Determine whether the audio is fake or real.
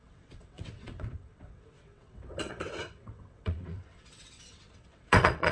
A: fake